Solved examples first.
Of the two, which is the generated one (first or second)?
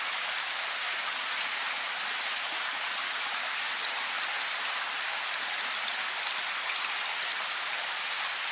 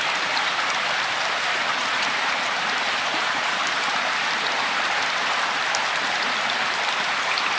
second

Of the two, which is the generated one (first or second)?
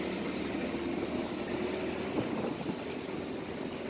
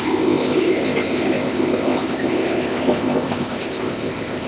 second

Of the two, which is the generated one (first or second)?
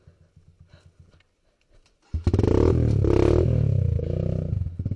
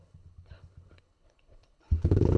second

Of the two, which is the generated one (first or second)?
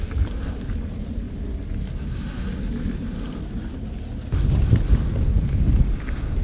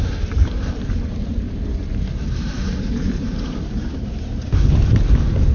second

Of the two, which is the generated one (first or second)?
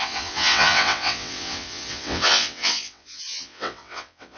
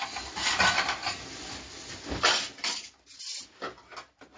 first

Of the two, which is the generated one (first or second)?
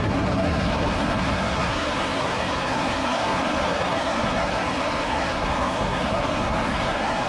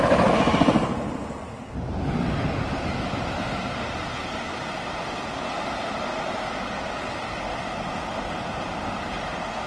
first